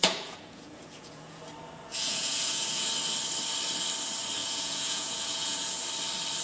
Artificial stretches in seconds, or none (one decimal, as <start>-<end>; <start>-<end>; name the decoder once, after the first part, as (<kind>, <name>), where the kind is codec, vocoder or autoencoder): 0.0-1.4 (vocoder, Vocos); 1.9-2.9; 4.4-5.8